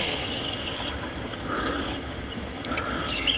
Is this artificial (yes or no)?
yes